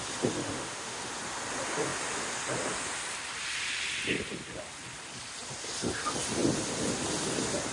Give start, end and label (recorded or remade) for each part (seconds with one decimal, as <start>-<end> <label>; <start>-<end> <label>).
0.0-0.4 recorded; 0.4-1.0 remade; 1.0-7.7 recorded